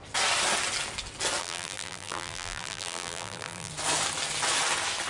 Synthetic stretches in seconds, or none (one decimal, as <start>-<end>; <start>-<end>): 1.4-3.7